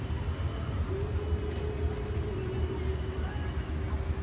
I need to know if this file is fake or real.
real